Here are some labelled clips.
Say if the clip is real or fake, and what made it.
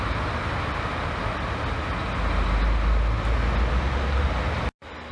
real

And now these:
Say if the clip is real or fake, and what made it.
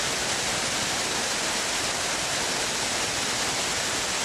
real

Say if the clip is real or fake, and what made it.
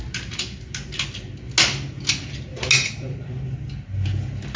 real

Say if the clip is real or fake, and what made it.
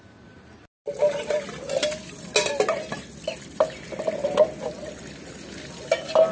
real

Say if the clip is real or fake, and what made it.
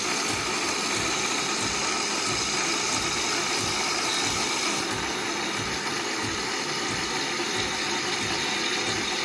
real